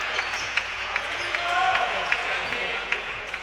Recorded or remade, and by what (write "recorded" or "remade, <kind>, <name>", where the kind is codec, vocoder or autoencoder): remade, vocoder, Vocos